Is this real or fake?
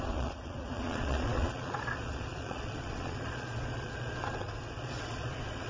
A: fake